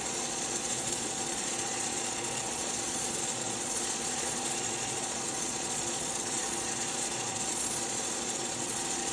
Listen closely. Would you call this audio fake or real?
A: fake